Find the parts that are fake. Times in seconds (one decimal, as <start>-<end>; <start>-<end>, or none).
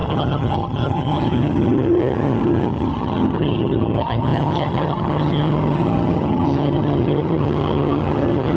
0.0-8.6